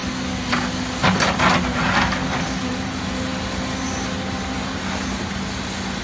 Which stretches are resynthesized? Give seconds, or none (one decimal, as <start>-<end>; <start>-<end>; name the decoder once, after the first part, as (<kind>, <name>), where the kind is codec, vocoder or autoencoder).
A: none